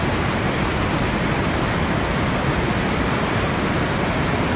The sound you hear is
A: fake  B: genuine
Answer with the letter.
B